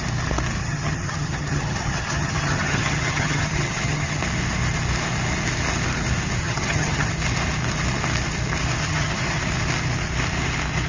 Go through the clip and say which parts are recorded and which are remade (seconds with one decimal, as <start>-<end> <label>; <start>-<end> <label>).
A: 0.0-0.6 recorded; 0.6-4.2 remade; 4.2-6.4 recorded; 6.4-7.1 remade; 7.1-8.8 recorded; 8.8-9.4 remade; 9.4-10.9 recorded